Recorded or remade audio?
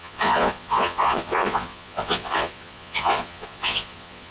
remade